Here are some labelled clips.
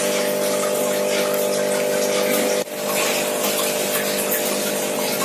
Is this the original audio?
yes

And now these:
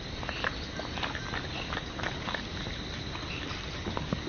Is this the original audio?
yes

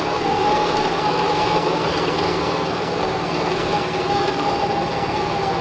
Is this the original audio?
no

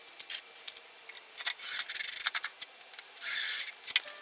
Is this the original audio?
yes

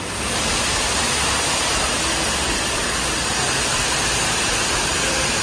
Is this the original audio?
yes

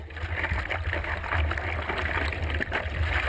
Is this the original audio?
yes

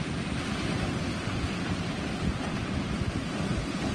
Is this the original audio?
yes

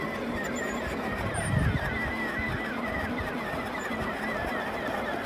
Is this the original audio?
yes